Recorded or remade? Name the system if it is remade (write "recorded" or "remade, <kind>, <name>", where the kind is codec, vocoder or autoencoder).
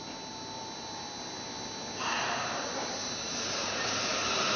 remade, vocoder, BigVGAN v2